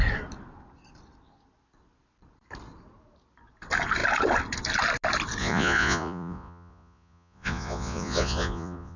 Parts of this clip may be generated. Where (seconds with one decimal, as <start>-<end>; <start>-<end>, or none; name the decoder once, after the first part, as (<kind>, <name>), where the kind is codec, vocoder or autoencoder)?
5.4-9.0 (vocoder, Vocos)